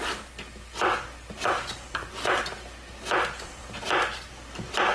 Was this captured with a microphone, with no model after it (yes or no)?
yes